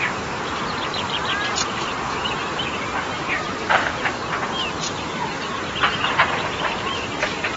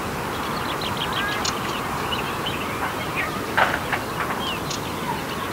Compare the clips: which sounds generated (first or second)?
first